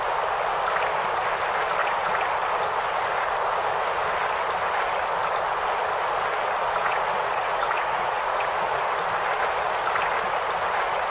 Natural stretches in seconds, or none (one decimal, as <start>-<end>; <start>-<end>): 0.0-1.8; 2.3-6.8; 8.8-11.1